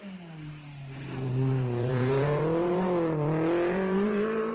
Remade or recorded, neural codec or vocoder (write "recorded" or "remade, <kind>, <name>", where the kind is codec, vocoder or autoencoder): remade, vocoder, BigVGAN v2